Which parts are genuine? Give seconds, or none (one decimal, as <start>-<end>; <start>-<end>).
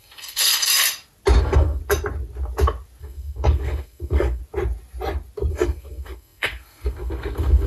0.7-1.4; 1.8-3.0; 4.4-5.5